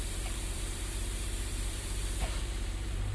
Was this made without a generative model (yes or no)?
no